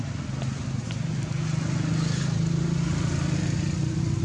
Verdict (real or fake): real